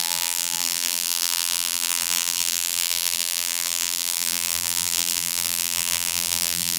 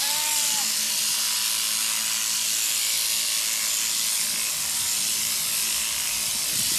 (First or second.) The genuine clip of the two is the second